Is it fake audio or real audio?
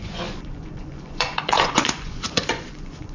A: fake